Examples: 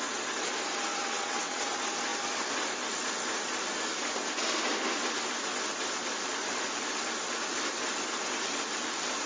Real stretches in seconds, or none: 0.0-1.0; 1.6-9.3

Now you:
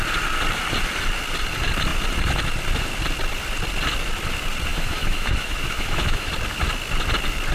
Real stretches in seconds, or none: 0.0-4.7; 6.3-7.5

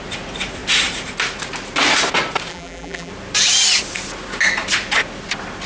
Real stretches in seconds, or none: 0.0-2.5; 3.1-5.7

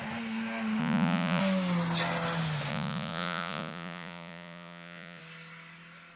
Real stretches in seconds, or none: 0.0-0.8; 1.4-2.7; 5.2-6.2

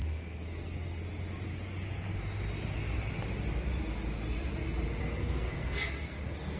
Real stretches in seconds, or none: 1.0-5.0

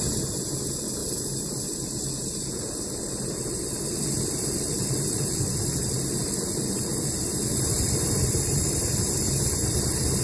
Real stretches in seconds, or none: 1.0-2.6

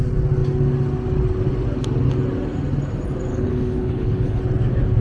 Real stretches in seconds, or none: 0.0-3.3; 4.4-5.0